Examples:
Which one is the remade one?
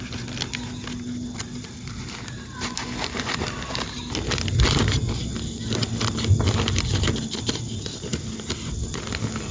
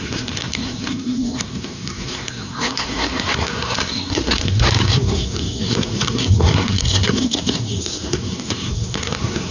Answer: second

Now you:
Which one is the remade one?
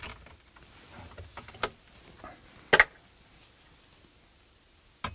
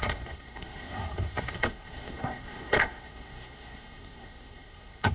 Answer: second